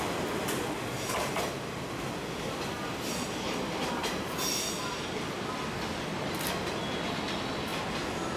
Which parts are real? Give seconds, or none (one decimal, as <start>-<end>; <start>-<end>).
0.0-8.4